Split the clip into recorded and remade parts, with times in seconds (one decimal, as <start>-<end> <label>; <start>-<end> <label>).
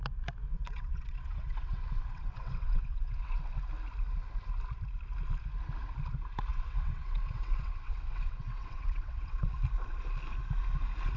0.0-0.5 recorded; 0.5-3.4 remade; 3.4-6.5 recorded; 6.5-9.5 remade; 9.5-11.2 recorded